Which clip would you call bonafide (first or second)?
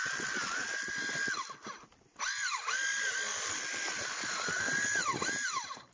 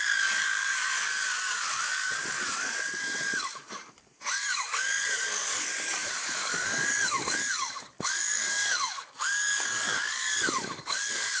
first